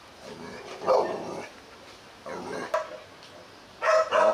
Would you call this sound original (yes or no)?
yes